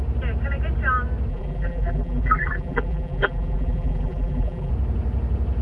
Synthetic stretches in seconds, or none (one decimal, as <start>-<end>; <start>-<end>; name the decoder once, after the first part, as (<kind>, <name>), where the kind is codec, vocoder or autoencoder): 1.3-4.7 (vocoder, BigVGAN v2)